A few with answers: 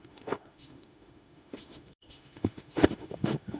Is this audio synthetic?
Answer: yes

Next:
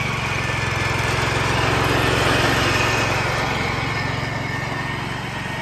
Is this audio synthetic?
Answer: no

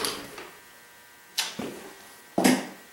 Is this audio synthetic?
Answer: no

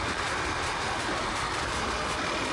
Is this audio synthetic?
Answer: no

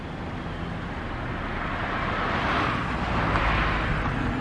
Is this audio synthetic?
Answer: no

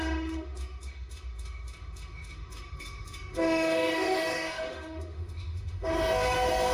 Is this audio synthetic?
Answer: yes